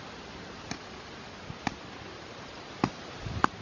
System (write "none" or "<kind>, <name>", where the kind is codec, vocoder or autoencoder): none